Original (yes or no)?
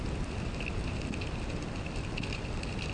yes